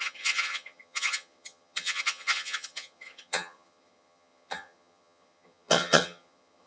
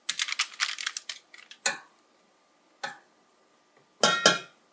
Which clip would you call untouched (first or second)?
second